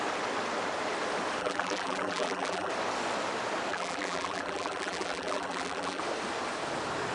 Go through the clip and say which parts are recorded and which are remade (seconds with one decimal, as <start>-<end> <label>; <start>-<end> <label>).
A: 0.0-1.4 recorded; 1.4-2.7 remade; 2.7-3.7 recorded; 3.7-6.0 remade; 6.0-7.1 recorded